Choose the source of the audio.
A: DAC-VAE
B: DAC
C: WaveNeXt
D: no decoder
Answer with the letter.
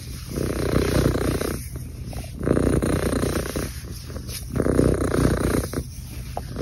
D